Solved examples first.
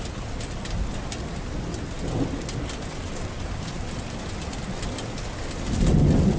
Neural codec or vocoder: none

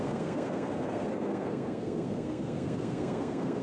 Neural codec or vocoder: codec, SNAC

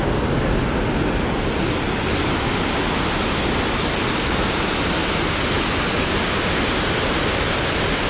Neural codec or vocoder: none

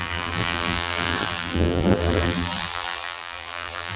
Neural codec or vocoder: vocoder, BigVGAN v2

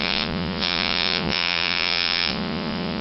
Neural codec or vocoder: vocoder, Vocos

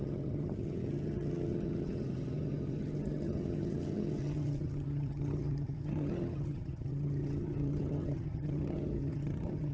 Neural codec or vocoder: vocoder, HiFi-GAN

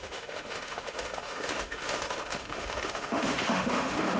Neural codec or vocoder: autoencoder, DAC-VAE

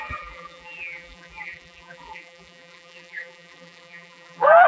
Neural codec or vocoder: vocoder, BigVGAN v2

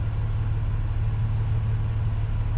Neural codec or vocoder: none